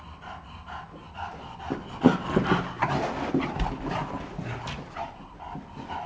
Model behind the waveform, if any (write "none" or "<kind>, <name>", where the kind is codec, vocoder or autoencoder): none